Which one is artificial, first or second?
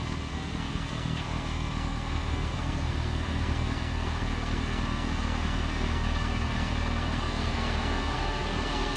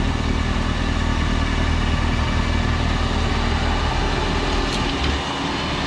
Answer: first